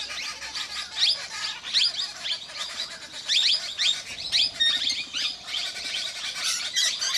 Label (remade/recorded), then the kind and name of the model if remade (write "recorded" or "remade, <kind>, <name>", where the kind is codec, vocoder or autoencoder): recorded